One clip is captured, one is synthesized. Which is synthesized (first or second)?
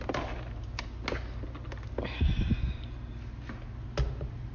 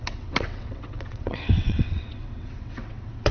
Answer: second